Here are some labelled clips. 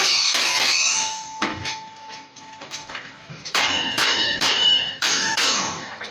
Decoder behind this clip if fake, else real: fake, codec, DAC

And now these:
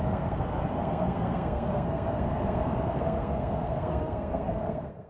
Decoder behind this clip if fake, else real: fake, codec, SNAC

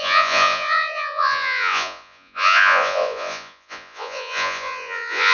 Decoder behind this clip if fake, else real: fake, vocoder, Vocos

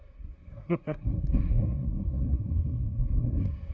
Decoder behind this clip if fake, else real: fake, codec, SNAC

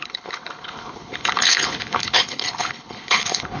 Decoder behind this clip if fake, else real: fake, codec, HILCodec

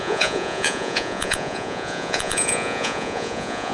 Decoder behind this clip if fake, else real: fake, vocoder, Vocos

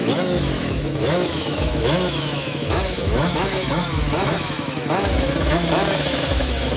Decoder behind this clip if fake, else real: fake, autoencoder, DAC-VAE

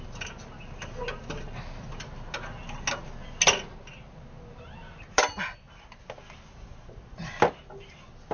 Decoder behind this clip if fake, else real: real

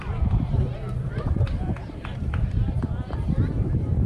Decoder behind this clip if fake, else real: fake, vocoder, BigVGAN v2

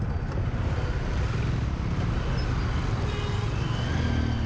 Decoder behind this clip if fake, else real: real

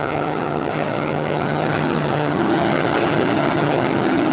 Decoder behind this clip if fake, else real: fake, vocoder, HiFi-GAN